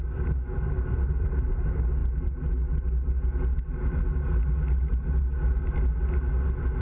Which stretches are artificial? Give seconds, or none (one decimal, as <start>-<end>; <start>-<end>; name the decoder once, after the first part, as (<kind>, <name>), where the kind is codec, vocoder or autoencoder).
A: none